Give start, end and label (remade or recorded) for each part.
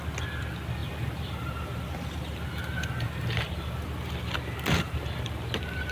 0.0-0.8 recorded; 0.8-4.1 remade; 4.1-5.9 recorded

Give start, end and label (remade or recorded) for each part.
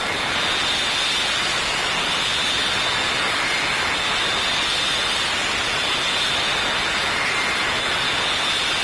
0.0-8.8 recorded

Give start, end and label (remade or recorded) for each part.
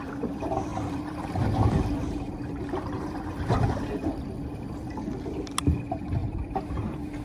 0.0-0.7 recorded; 0.7-3.8 remade; 3.8-6.2 recorded; 6.2-7.2 remade